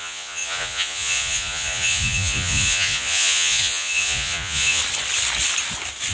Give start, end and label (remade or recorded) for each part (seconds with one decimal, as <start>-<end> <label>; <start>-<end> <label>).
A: 0.0-4.8 remade; 4.8-6.1 recorded